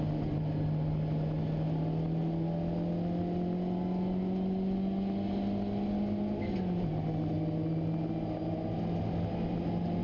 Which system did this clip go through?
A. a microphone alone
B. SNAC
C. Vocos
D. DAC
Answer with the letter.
A